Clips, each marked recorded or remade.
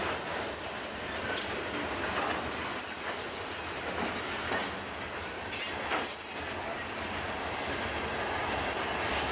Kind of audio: recorded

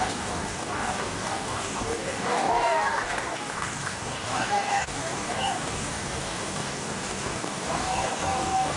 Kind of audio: remade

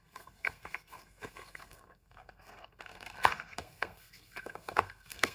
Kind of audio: remade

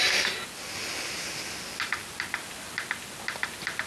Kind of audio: recorded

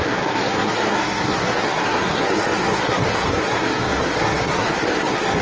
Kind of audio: remade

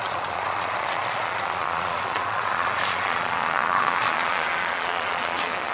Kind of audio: remade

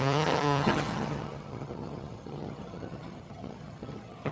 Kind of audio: remade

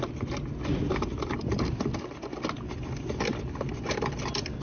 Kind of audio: recorded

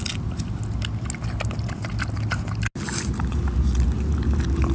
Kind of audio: recorded